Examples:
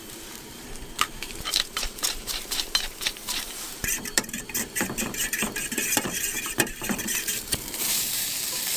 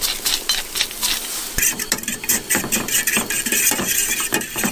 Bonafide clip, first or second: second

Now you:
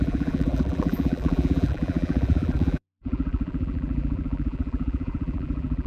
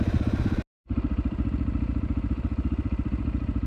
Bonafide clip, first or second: second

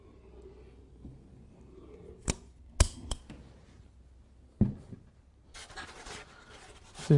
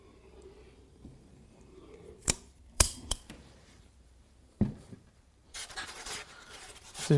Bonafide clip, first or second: first